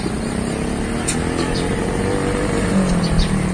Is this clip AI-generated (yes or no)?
no